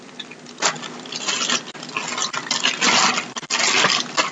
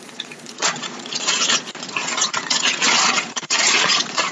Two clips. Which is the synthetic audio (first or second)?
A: second